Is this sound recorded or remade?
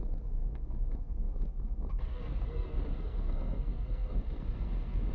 remade